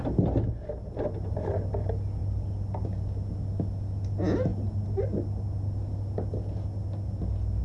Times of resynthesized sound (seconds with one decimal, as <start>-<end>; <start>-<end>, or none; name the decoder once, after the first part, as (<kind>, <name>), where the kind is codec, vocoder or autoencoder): none